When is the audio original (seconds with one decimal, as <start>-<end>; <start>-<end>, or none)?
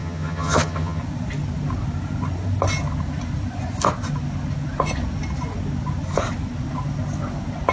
1.0-7.7